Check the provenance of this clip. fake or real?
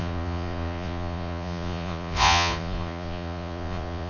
fake